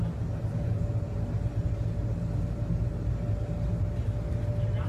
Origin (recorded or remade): recorded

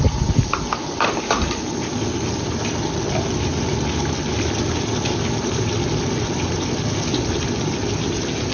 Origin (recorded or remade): recorded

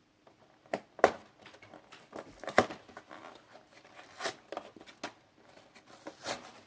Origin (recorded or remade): recorded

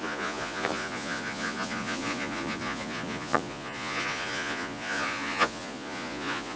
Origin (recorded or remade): remade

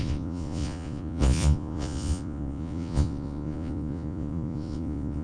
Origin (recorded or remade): remade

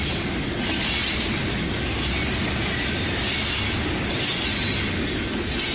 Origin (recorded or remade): recorded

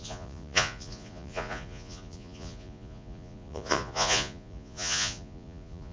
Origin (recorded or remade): remade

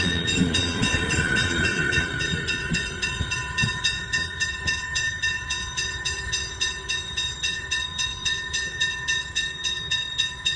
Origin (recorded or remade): remade